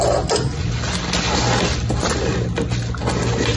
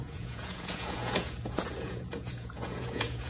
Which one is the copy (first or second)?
second